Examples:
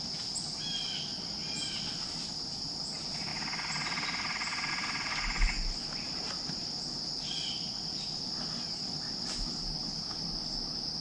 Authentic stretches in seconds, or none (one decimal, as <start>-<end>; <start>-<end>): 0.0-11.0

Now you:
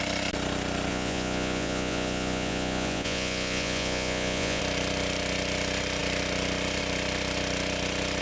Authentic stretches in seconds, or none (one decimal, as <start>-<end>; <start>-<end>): 0.0-0.9; 4.6-8.2

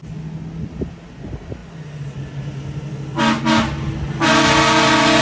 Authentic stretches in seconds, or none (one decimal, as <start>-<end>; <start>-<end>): 0.0-5.2